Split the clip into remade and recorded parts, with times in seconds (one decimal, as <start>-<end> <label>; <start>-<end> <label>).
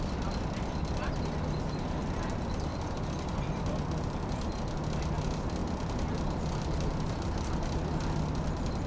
0.0-2.7 recorded; 2.7-4.5 remade; 4.5-5.6 recorded; 5.6-6.9 remade; 6.9-8.9 recorded